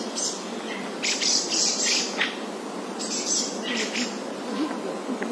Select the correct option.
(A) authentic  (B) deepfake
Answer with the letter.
B